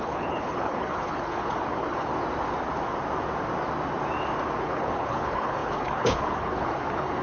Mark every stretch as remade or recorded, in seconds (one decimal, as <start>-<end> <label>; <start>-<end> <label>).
0.0-2.1 remade; 2.1-4.6 recorded; 4.6-7.2 remade